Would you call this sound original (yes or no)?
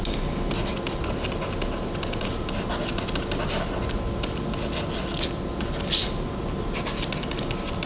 yes